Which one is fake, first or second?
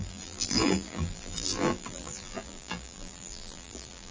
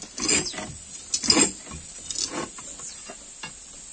first